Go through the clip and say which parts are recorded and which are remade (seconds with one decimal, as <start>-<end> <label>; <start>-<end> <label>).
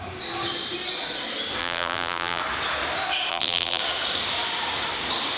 0.0-1.6 recorded; 1.6-2.4 remade; 2.4-3.3 recorded; 3.3-3.8 remade; 3.8-5.4 recorded